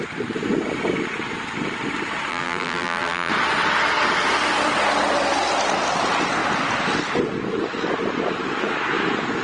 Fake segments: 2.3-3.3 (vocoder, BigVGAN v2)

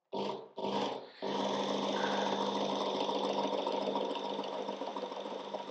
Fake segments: 4.9-5.7 (vocoder, BigVGAN v2)

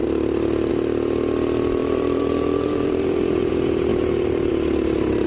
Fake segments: 1.8-3.5 (vocoder, BigVGAN v2); 3.9-4.5